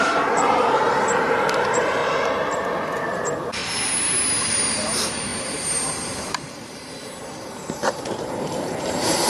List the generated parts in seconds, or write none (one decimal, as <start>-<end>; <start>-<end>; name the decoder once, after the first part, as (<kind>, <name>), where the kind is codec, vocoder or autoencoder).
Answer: 0.0-2.0 (vocoder, BigVGAN v2); 3.0-3.6; 4.5-9.3